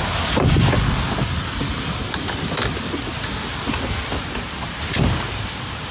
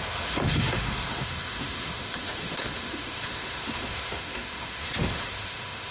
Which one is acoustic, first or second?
first